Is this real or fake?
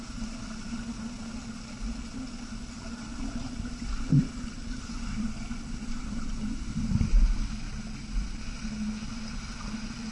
real